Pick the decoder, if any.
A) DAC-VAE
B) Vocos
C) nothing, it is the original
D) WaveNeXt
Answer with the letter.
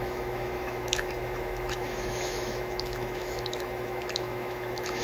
A